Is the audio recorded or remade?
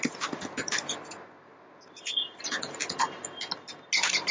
recorded